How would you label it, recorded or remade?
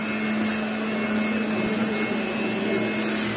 recorded